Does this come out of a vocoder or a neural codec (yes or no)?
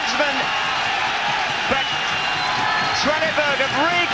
no